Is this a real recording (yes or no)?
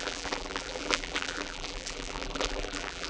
no